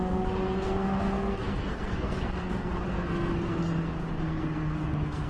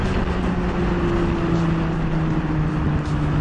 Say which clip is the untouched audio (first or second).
second